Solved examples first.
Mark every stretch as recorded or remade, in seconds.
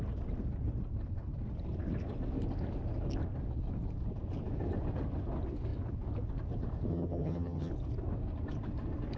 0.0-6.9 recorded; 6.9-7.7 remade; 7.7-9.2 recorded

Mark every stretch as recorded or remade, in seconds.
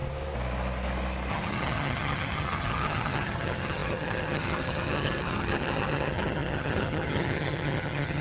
0.0-1.3 recorded; 1.3-8.2 remade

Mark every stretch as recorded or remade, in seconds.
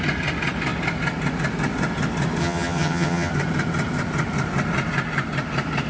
0.0-2.4 recorded; 2.4-3.3 remade; 3.3-5.9 recorded